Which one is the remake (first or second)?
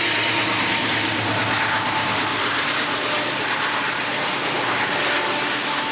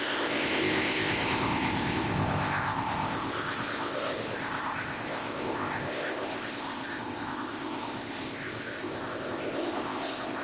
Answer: second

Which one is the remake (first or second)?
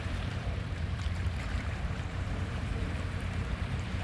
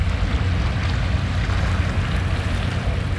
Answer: first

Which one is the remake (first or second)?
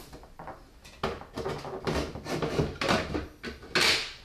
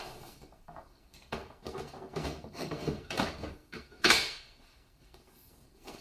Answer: second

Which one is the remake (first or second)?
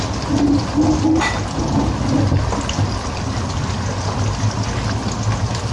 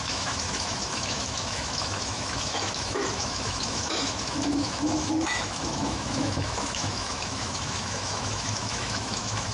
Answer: second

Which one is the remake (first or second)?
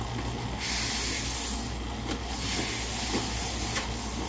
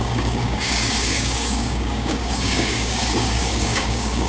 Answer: second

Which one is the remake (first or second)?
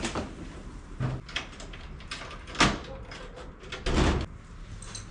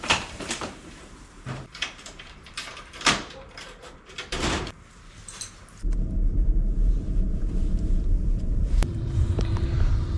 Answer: second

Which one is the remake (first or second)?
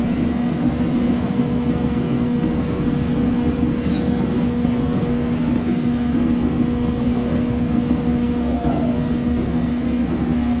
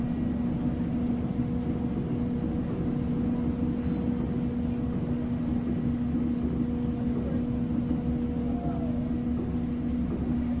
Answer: first